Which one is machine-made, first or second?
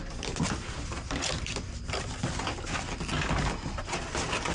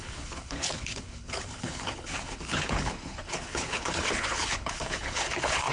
second